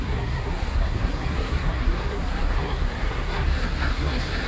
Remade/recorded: remade